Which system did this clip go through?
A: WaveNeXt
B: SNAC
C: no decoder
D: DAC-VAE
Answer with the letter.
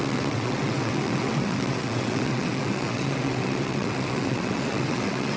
A